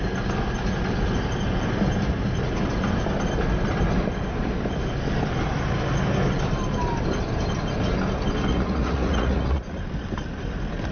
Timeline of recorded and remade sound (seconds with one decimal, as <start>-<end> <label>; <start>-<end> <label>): 0.0-8.5 recorded; 8.5-9.8 remade; 9.8-10.9 recorded